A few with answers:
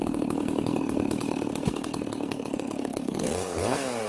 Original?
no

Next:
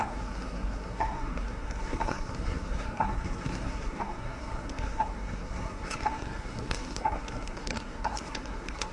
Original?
no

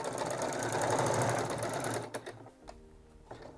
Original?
yes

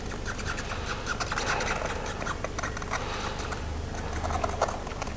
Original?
yes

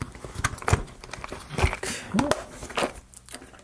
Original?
yes